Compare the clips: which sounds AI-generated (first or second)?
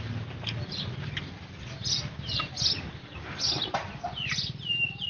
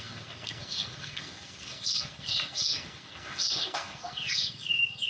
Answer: second